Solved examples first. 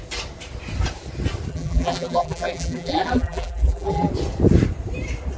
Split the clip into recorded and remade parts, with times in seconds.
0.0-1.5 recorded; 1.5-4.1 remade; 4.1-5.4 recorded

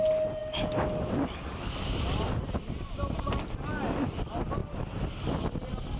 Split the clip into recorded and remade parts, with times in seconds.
0.0-6.0 recorded

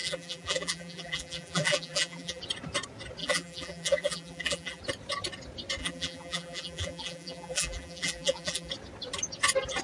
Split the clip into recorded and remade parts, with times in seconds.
0.0-2.4 remade; 2.4-3.2 recorded; 3.2-4.8 remade; 4.8-5.8 recorded; 5.8-8.7 remade; 8.7-9.8 recorded

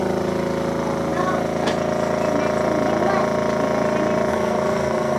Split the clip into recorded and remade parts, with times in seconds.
0.0-4.3 recorded; 4.3-5.2 remade

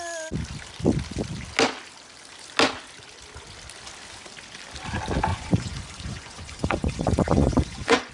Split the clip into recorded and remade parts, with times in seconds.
0.0-5.3 recorded; 5.3-8.1 remade

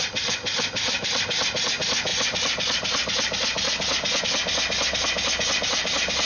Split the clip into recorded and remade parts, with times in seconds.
0.0-6.3 recorded